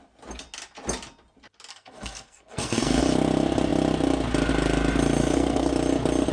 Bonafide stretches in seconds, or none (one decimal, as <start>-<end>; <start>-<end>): 0.0-1.7; 3.0-5.2; 5.7-6.3